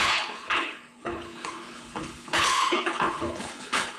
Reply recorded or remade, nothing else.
remade